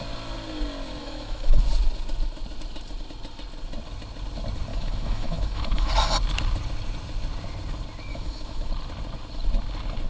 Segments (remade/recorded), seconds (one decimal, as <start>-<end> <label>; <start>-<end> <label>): 0.0-1.0 recorded; 1.0-1.6 remade; 1.6-4.7 recorded; 4.7-5.9 remade; 5.9-8.1 recorded; 8.1-8.7 remade; 8.7-10.1 recorded